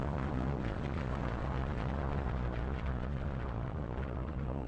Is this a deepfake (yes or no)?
yes